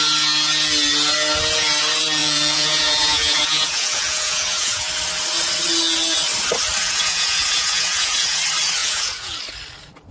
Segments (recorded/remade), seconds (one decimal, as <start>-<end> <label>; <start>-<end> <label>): 0.0-2.2 recorded; 2.2-4.9 remade; 4.9-6.8 recorded; 6.8-8.4 remade; 8.4-8.8 recorded; 8.8-9.4 remade; 9.4-10.1 recorded